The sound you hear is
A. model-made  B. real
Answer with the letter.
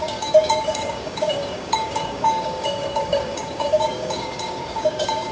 A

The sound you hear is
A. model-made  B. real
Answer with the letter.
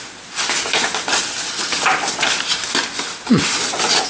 B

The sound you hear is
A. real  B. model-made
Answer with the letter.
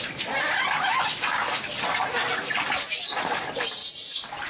A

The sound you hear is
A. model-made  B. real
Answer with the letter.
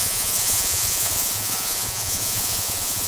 A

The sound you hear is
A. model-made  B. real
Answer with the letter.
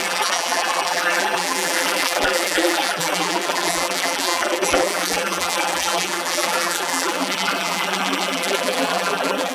A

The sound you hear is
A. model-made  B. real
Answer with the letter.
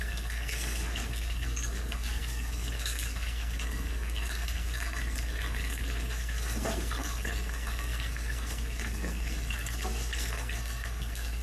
A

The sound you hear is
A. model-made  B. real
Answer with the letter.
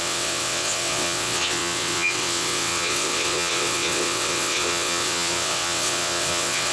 A